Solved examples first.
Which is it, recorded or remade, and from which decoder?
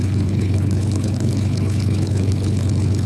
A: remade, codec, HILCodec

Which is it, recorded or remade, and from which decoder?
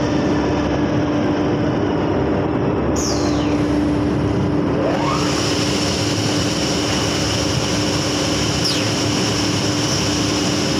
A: recorded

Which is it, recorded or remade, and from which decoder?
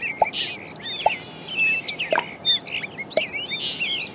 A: recorded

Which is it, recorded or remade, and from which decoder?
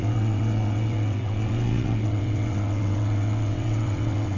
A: remade, vocoder, WaveNeXt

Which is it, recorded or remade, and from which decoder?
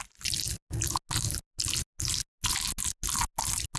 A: recorded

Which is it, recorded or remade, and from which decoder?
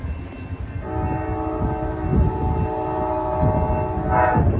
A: recorded